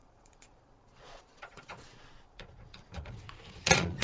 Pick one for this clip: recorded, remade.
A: remade